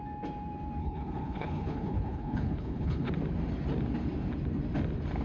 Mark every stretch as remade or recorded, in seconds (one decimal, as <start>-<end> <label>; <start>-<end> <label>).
0.0-0.8 recorded; 0.8-3.1 remade; 3.1-5.2 recorded